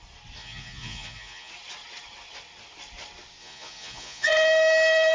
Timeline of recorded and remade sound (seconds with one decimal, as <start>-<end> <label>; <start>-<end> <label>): 0.0-0.4 recorded; 0.4-1.5 remade; 1.5-3.4 recorded; 3.4-4.3 remade; 4.3-5.1 recorded